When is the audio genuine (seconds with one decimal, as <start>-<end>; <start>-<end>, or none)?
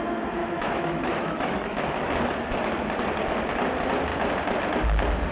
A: 0.0-0.4; 2.1-5.3